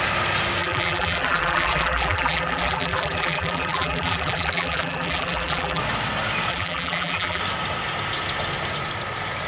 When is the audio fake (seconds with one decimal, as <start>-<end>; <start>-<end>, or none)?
0.6-5.8; 6.5-7.4